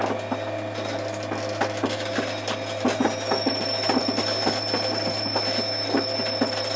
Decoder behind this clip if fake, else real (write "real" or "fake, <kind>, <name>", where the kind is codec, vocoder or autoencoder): real